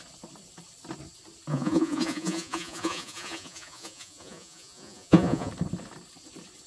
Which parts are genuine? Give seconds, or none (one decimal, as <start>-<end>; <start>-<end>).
0.0-1.5; 5.5-6.7